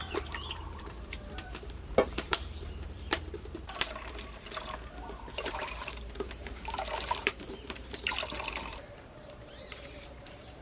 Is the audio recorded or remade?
remade